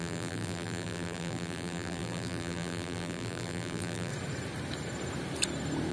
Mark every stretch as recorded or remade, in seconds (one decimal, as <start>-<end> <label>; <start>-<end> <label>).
0.0-4.1 remade; 4.1-5.9 recorded